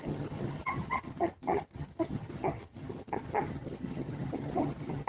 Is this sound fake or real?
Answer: fake